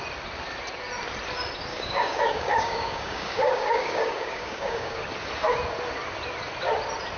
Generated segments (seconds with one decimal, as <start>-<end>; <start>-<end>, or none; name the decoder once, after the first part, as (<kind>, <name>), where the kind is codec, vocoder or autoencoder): 1.7-5.0 (codec, DAC)